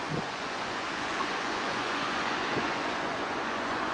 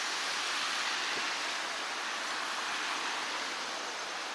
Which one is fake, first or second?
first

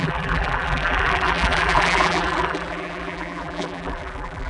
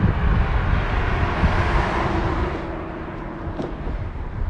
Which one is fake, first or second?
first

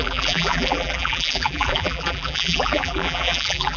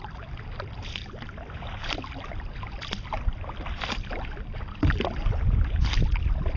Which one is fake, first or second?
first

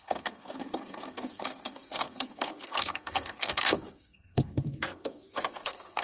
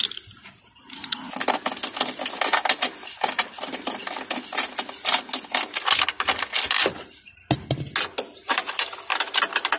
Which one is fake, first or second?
first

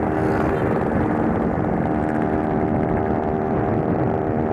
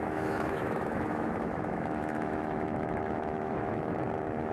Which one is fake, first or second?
second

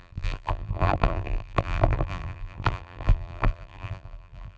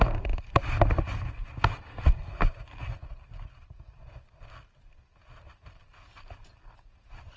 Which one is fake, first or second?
first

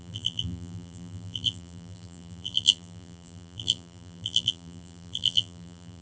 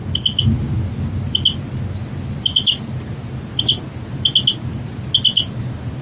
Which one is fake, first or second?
first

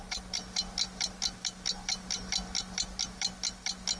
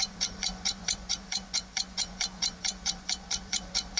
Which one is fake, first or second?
second